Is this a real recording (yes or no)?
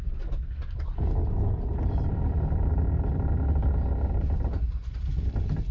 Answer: yes